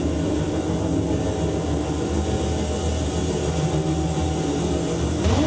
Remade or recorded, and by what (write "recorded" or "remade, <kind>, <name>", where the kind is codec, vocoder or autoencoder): recorded